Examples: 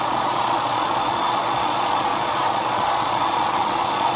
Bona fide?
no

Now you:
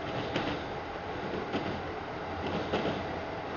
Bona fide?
yes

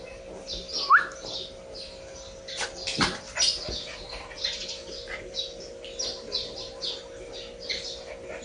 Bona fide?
yes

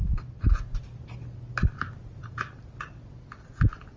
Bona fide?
yes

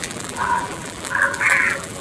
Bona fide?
no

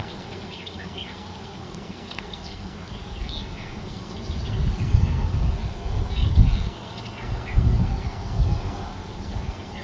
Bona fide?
no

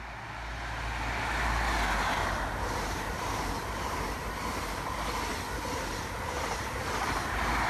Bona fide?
yes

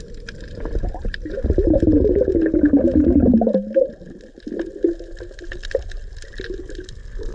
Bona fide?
yes